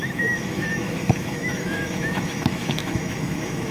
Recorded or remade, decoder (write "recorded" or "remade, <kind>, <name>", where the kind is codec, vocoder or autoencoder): remade, autoencoder, DAC-VAE